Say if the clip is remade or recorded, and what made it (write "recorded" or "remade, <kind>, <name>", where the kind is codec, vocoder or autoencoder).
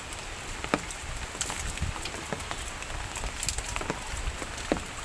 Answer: recorded